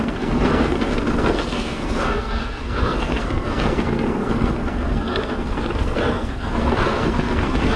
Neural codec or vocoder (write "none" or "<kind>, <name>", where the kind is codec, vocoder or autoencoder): codec, SNAC